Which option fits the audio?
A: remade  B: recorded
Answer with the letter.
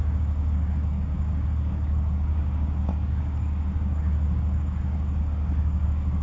A